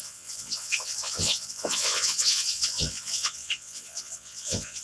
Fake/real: fake